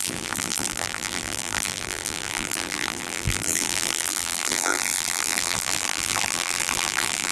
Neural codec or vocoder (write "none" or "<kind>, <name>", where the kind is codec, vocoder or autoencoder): vocoder, BigVGAN v2